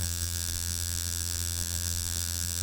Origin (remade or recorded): remade